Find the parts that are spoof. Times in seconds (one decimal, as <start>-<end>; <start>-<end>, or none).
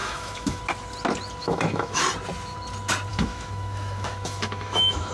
0.0-0.6; 1.4-2.0; 3.1-5.1